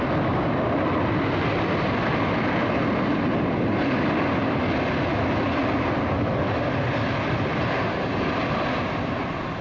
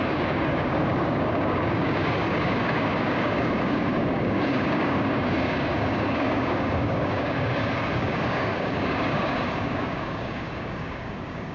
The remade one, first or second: second